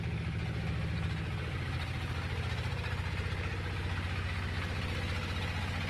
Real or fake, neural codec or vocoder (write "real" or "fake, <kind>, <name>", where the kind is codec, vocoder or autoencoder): real